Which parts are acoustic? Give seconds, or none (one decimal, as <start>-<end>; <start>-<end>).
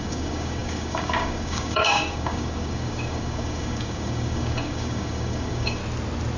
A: 5.8-6.4